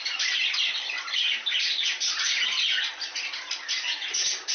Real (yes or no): yes